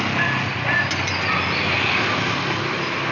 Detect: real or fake real